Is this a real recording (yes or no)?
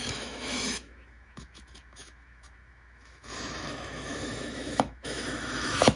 no